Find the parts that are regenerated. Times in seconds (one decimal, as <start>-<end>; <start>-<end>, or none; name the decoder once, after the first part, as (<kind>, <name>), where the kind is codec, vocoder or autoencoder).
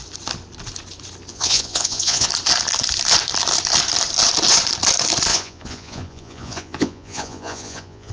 1.3-2.3 (vocoder, Vocos); 5.3-8.1